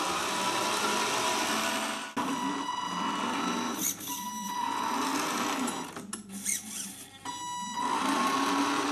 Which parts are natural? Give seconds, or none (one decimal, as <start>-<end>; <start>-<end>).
0.0-8.9